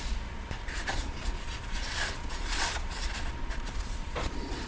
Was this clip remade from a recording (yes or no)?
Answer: yes